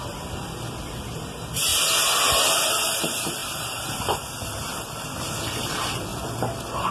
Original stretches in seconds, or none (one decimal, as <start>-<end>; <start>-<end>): 0.0-6.9